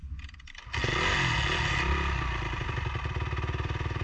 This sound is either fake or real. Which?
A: real